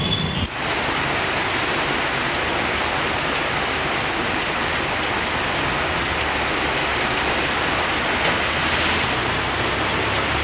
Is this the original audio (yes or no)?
yes